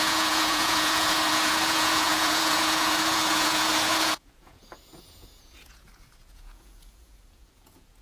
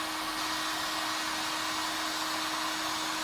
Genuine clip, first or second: second